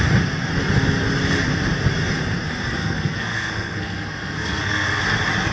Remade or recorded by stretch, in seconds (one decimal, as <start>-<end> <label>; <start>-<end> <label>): 0.0-2.8 recorded; 2.8-5.0 remade; 5.0-5.5 recorded